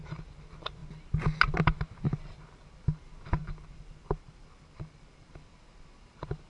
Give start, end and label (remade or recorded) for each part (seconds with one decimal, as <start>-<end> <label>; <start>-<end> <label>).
0.0-6.5 recorded